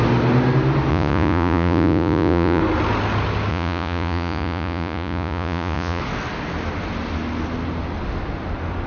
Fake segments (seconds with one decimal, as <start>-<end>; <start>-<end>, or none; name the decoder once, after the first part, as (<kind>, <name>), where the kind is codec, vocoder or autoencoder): 0.9-2.6 (vocoder, Vocos); 3.5-6.0